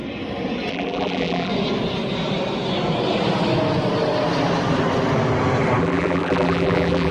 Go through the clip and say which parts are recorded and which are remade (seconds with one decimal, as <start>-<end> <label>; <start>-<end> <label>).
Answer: 0.0-0.7 recorded; 0.7-1.5 remade; 1.5-5.8 recorded; 5.8-7.1 remade